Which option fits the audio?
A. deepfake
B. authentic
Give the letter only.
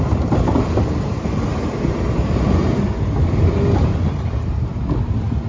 B